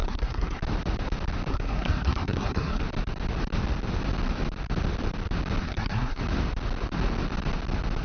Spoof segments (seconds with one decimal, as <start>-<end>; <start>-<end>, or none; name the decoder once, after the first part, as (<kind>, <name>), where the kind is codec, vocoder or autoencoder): 0.0-0.6 (codec, SNAC); 1.5-2.8; 5.6-6.2